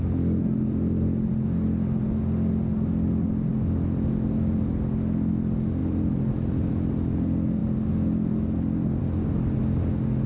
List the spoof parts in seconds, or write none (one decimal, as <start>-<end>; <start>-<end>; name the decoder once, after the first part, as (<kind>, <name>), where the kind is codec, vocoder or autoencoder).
none